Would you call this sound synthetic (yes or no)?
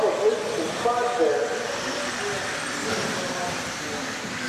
no